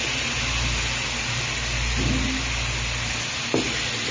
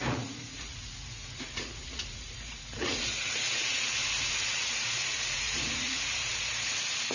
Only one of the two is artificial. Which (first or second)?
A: second